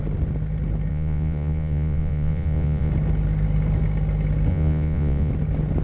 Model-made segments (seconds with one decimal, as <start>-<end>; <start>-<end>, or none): 0.9-2.9; 4.5-5.3